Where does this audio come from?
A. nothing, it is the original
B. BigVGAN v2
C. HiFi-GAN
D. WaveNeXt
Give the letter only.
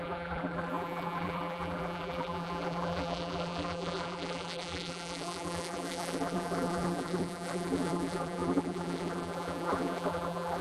B